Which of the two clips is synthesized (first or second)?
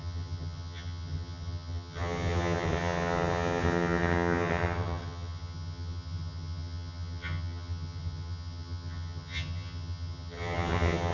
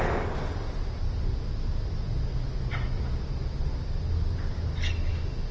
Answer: first